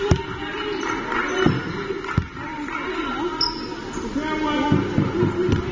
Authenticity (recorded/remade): recorded